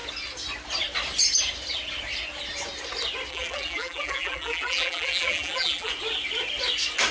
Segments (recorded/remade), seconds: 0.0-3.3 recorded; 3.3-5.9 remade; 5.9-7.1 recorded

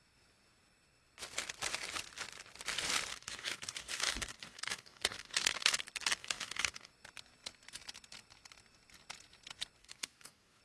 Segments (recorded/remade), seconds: 0.0-3.1 recorded; 3.1-5.8 remade; 5.8-6.2 recorded; 6.2-6.9 remade; 6.9-9.8 recorded; 9.8-10.6 remade